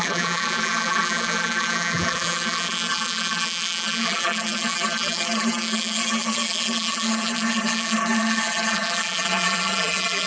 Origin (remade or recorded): remade